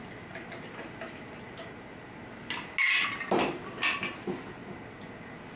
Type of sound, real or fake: real